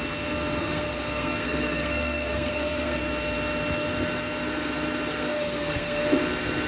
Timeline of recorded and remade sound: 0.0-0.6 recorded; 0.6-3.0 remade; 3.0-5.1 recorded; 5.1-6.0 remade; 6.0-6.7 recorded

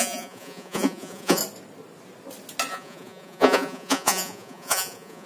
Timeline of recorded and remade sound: 0.0-1.4 remade; 1.4-2.7 recorded; 2.7-5.3 remade

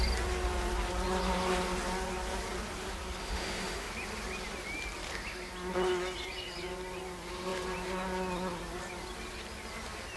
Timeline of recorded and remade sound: 0.0-3.2 recorded; 3.2-3.9 remade; 3.9-10.2 recorded

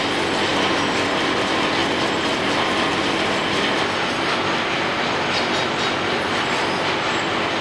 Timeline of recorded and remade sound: 0.0-7.6 recorded

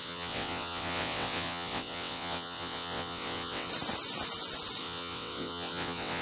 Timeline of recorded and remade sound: 0.0-3.7 remade; 3.7-4.8 recorded; 4.8-6.2 remade

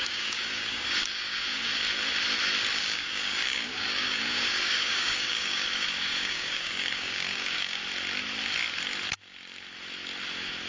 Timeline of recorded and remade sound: 0.0-1.7 remade; 1.7-2.7 recorded; 2.7-7.8 remade; 7.8-10.7 recorded

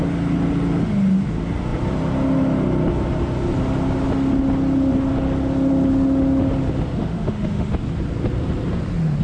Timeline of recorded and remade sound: 0.0-7.0 recorded; 7.0-7.7 remade; 7.7-9.2 recorded

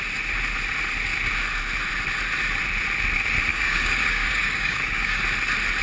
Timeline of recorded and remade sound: 0.0-3.5 recorded; 3.5-5.2 remade; 5.2-5.8 recorded